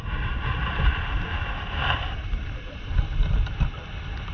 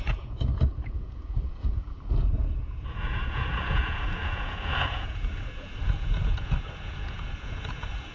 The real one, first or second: first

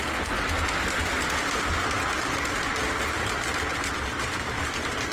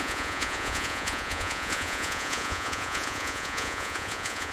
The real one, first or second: first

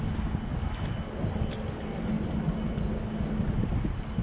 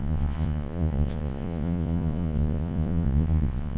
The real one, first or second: first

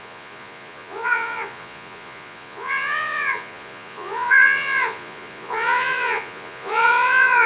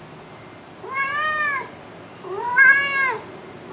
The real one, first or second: second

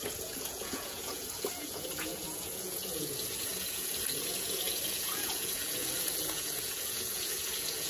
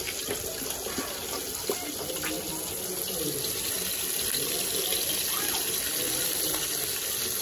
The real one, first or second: second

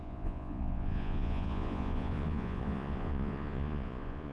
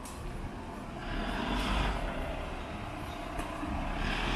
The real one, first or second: second